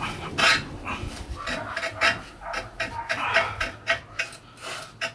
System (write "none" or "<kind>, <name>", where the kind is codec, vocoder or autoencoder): none